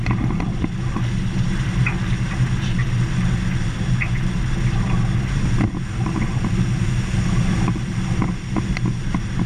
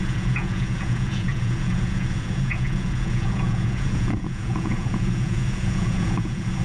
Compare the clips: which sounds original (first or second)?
first